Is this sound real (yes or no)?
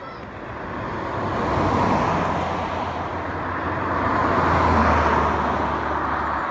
yes